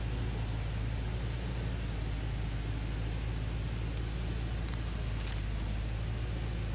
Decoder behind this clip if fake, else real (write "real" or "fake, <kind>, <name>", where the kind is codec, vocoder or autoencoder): real